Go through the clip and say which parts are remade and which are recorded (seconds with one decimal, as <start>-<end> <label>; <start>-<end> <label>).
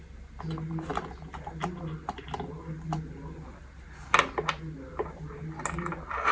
0.0-6.3 recorded